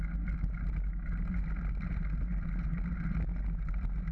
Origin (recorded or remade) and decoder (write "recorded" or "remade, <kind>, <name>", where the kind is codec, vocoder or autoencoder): recorded